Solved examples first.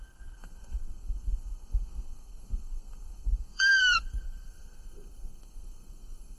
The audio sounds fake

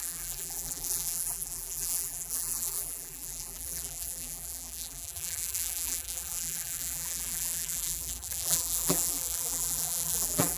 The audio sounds fake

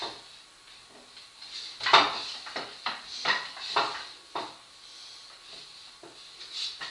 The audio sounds real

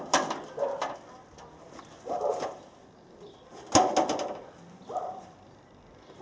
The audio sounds real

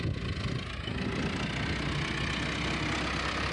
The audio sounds real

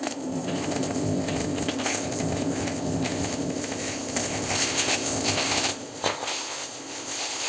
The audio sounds fake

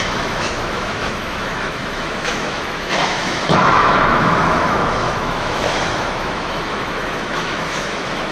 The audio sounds fake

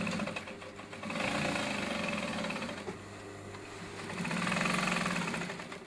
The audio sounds real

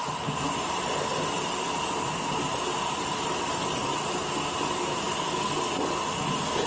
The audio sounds real